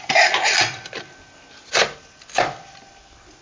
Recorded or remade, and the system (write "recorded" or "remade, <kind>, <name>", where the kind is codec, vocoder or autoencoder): recorded